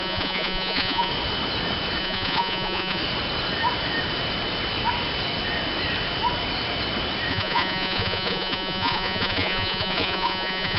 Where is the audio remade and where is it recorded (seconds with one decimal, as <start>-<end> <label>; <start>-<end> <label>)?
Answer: 0.0-1.1 remade; 1.1-2.0 recorded; 2.0-3.0 remade; 3.0-7.3 recorded; 7.3-10.8 remade